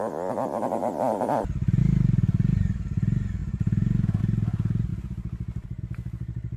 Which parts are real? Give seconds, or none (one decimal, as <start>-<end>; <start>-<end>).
0.0-3.4; 4.2-6.6